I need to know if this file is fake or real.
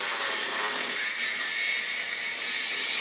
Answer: fake